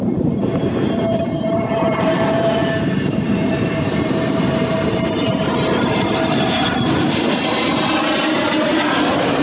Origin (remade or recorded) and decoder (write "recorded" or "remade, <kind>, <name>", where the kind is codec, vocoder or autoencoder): remade, vocoder, BigVGAN v2